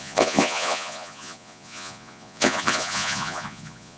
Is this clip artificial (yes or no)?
yes